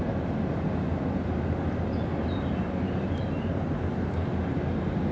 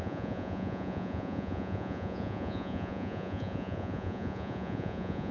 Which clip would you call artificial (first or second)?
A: second